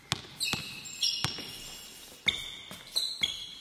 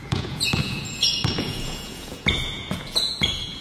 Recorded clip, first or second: first